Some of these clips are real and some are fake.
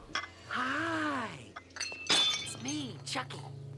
real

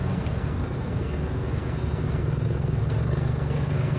fake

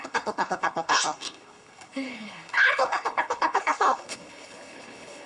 fake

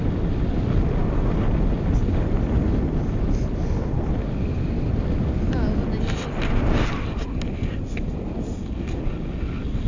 real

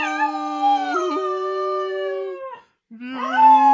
real